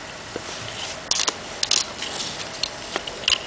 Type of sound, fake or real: real